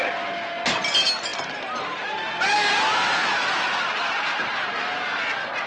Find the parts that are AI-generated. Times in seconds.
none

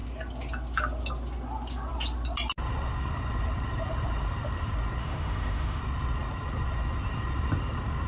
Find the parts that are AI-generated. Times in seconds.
5.0-5.8 (autoencoder, DAC-VAE)

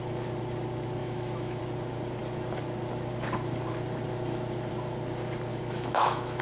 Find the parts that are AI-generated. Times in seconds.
1.0-1.6 (autoencoder, DAC-VAE); 5.5-6.4

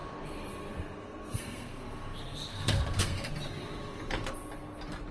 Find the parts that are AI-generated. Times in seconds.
0.7-1.8 (codec, SNAC); 2.5-3.3

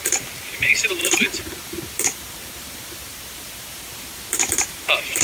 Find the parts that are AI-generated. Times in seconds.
0.0-5.2 (vocoder, BigVGAN v2)

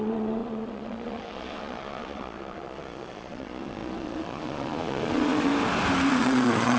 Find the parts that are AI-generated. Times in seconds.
0.0-5.5 (vocoder, Vocos); 6.1-6.8

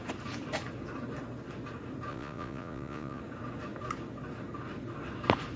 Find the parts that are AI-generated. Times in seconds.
2.1-3.2 (vocoder, Vocos)

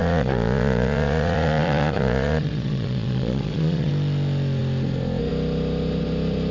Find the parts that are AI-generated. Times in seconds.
0.0-3.9 (vocoder, Vocos)